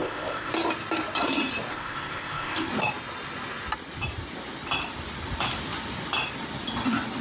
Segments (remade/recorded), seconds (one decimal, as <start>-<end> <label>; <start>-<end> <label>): 0.0-0.5 remade; 0.5-1.7 recorded; 1.7-2.7 remade; 2.7-7.2 recorded